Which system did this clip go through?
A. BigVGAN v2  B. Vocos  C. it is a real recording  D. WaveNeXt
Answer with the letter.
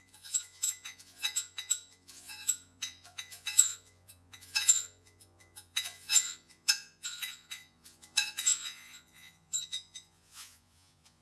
B